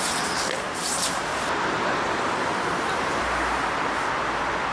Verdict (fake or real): fake